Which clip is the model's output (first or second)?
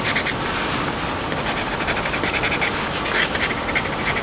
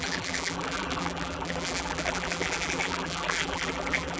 second